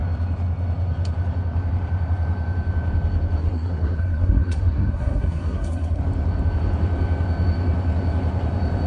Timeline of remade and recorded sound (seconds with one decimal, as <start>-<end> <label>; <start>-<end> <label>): 0.0-3.4 recorded; 3.4-6.0 remade; 6.0-8.9 recorded